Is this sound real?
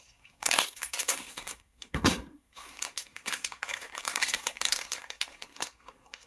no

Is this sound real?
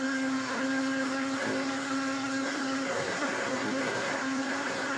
no